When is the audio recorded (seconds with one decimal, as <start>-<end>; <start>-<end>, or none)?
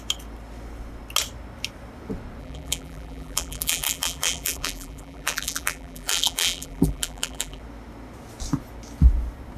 0.0-2.4; 7.6-9.6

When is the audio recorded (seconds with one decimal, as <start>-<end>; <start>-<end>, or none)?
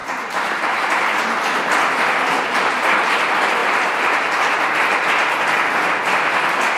1.2-6.8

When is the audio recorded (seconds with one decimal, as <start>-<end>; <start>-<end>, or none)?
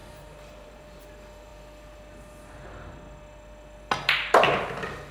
1.0-5.1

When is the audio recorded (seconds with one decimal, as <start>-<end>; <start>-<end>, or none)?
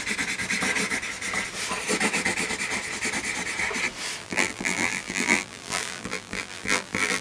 0.0-4.2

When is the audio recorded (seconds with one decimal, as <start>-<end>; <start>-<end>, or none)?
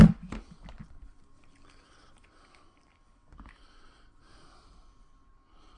0.0-5.8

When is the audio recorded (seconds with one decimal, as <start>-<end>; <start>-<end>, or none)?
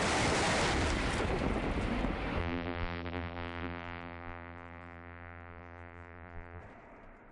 0.0-2.4; 6.6-7.3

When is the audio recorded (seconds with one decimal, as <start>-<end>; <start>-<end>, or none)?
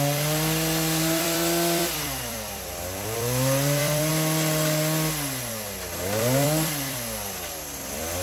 4.1-5.5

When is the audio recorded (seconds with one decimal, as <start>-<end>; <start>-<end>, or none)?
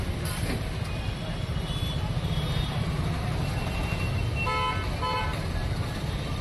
0.0-1.2; 3.7-5.6